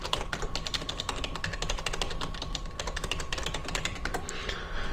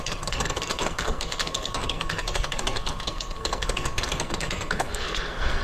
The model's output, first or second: second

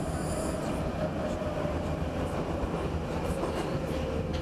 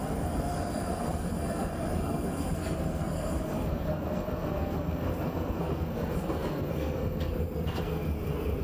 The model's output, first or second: second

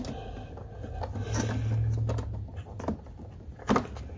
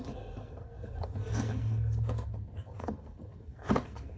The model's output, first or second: second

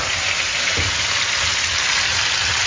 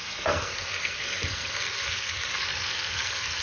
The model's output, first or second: second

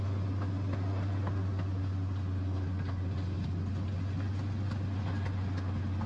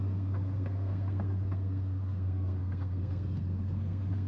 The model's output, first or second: second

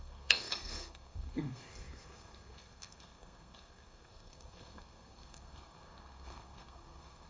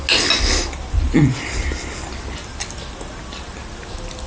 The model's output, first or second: first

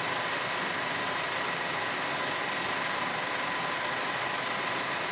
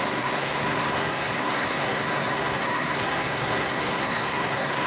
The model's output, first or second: second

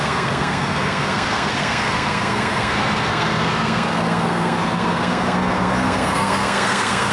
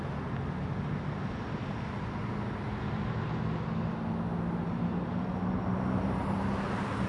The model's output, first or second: first